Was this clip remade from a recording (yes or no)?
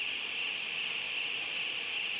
no